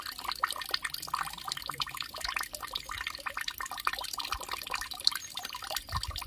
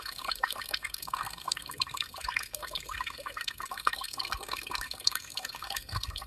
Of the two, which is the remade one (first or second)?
second